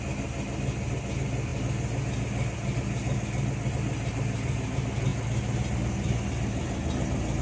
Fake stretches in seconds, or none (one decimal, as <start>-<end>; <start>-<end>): 5.1-7.0